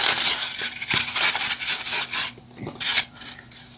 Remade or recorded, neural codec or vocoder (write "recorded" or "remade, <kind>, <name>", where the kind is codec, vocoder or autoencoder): recorded